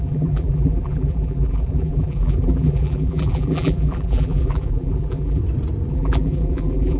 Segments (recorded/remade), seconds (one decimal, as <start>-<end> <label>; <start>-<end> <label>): 0.0-5.4 remade; 5.4-5.9 recorded; 5.9-7.0 remade